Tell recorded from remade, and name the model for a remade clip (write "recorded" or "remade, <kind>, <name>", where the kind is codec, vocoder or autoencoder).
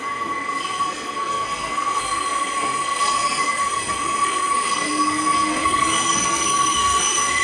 remade, codec, SNAC